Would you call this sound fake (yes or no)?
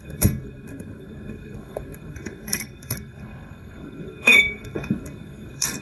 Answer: yes